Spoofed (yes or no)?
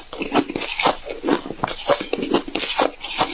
no